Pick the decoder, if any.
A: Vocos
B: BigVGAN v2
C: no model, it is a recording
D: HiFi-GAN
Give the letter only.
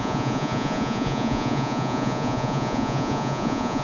A